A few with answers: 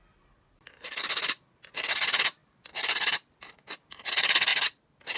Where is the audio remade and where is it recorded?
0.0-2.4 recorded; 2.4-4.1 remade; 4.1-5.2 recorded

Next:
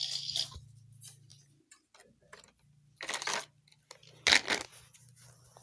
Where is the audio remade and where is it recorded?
0.0-5.6 recorded

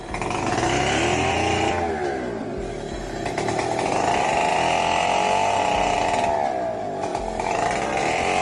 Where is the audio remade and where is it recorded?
0.0-1.1 recorded; 1.1-1.9 remade; 1.9-8.4 recorded

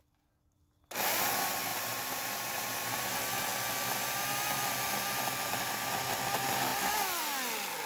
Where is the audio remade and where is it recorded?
0.0-1.7 recorded; 1.7-3.1 remade; 3.1-7.9 recorded

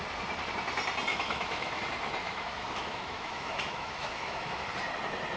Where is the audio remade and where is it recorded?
0.0-1.1 recorded; 1.1-1.8 remade; 1.8-2.2 recorded; 2.2-4.7 remade; 4.7-5.4 recorded

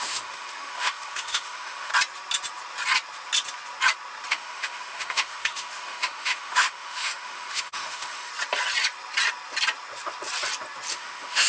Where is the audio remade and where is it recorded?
0.0-1.9 remade; 1.9-4.3 recorded; 4.3-8.3 remade; 8.3-10.9 recorded; 10.9-11.5 remade